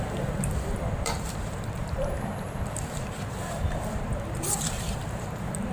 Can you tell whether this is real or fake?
fake